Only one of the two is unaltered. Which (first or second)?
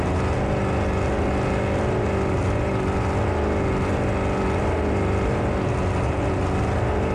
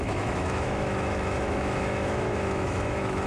first